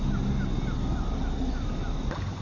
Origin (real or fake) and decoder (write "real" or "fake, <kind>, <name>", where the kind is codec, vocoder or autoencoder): real